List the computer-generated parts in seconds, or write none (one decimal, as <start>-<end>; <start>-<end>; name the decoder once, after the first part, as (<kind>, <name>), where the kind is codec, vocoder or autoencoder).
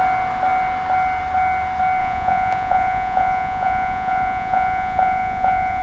2.0-5.8 (vocoder, Vocos)